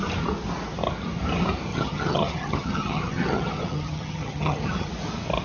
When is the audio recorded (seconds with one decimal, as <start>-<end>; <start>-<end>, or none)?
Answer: 0.0-1.7; 4.9-5.4

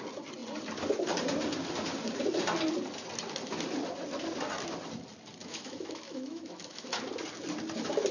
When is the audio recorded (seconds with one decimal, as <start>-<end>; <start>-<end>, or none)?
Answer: 0.0-5.4; 7.0-8.1

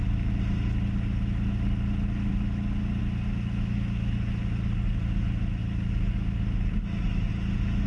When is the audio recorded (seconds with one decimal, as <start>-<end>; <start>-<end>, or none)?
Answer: 0.0-5.6; 7.3-7.9